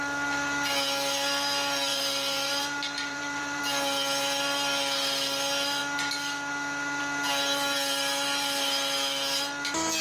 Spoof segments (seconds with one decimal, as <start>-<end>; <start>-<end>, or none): 1.9-3.6